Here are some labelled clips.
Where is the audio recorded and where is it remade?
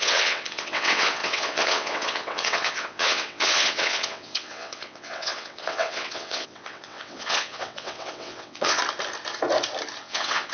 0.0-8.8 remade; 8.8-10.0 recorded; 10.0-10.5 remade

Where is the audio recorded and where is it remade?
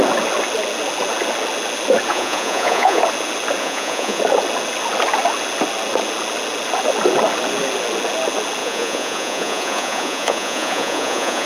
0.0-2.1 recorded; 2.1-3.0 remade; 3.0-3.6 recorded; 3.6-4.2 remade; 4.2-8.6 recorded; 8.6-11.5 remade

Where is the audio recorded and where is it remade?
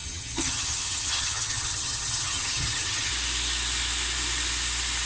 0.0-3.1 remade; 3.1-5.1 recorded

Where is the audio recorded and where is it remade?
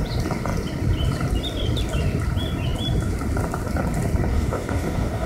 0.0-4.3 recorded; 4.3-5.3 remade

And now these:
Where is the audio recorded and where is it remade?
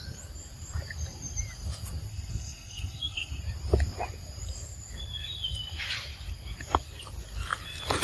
0.0-2.1 recorded; 2.1-3.4 remade; 3.4-8.0 recorded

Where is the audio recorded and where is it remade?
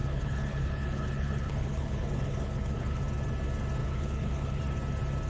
0.0-3.0 remade; 3.0-3.8 recorded; 3.8-4.6 remade; 4.6-5.3 recorded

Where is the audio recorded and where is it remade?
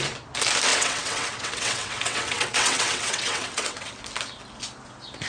0.0-0.7 recorded; 0.7-3.9 remade; 3.9-5.3 recorded